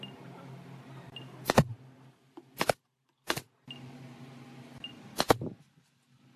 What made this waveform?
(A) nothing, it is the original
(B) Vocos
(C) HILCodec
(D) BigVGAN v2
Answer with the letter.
A